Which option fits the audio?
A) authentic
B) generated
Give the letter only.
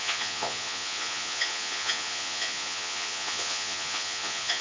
B